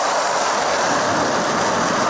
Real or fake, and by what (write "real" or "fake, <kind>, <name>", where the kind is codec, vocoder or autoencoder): real